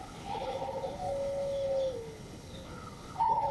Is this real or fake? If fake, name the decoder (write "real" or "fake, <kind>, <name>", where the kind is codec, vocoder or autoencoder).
fake, codec, HILCodec